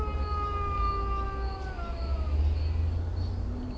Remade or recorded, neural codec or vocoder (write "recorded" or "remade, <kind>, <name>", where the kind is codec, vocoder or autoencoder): recorded